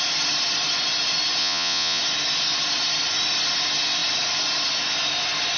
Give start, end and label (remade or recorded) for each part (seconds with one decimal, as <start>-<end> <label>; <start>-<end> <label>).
0.0-1.4 recorded; 1.4-2.0 remade; 2.0-5.6 recorded